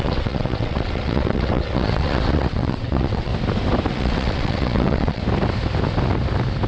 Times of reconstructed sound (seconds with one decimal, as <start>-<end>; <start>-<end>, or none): 0.0-3.3; 3.9-5.2